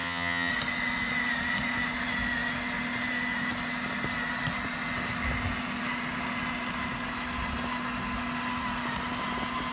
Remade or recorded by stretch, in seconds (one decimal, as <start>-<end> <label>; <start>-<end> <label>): 0.0-0.5 remade; 0.5-9.7 recorded